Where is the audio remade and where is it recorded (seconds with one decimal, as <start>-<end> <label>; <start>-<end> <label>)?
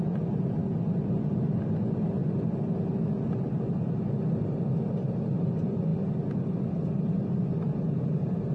0.0-8.5 recorded